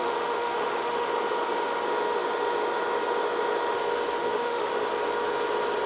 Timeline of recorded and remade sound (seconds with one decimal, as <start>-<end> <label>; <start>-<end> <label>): 0.0-1.1 remade; 1.1-4.2 recorded; 4.2-4.9 remade; 4.9-5.9 recorded